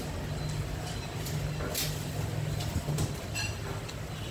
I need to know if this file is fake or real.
real